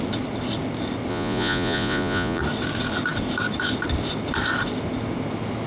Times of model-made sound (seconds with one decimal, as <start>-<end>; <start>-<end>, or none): 1.1-2.4